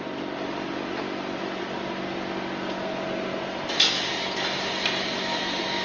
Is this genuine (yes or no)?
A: yes